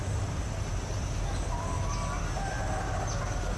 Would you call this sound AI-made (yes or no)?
no